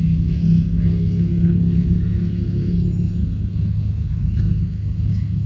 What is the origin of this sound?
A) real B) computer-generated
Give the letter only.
B